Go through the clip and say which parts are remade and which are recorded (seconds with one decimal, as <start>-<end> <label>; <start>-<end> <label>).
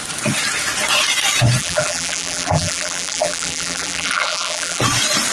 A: 0.0-1.6 recorded; 1.6-4.8 remade; 4.8-5.3 recorded